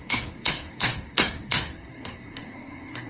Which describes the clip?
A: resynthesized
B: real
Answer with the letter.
A